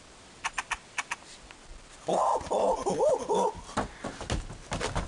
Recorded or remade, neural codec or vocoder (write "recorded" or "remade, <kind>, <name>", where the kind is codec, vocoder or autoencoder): recorded